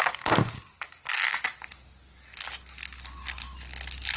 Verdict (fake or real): real